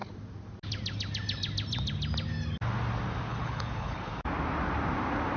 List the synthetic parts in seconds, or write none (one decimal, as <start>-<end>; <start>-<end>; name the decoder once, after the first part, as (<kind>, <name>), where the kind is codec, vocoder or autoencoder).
3.3-4.1 (codec, HILCodec)

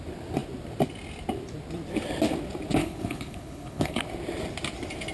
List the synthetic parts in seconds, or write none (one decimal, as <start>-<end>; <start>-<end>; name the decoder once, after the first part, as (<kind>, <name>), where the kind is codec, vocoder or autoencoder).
2.8-4.0 (codec, HILCodec)

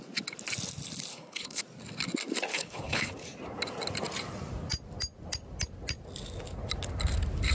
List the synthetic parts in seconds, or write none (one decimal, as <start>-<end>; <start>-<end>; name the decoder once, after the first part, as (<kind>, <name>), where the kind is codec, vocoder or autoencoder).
1.1-1.6 (codec, HILCodec); 2.5-3.1

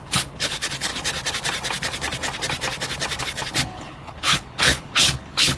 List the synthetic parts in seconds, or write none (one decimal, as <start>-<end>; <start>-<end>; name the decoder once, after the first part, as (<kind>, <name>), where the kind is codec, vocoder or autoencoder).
0.0-0.9 (codec, HILCodec); 3.2-5.6

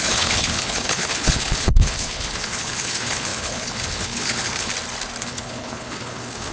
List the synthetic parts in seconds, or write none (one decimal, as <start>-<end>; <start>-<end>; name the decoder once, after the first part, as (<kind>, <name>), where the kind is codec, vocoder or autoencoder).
0.0-4.7 (codec, HILCodec); 5.2-6.5

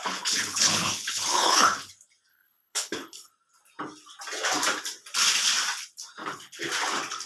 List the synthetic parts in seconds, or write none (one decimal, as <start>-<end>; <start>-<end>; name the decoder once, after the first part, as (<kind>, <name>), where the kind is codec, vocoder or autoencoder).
0.0-1.9 (codec, HILCodec); 2.3-3.3; 6.2-6.7